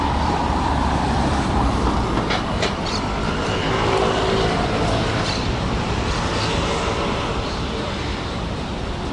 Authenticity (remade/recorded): remade